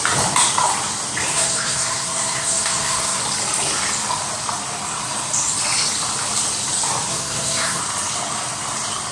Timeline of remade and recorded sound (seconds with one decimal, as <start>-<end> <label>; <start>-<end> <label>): 0.0-1.3 recorded; 1.3-3.2 remade; 3.2-7.1 recorded; 7.1-7.8 remade; 7.8-9.1 recorded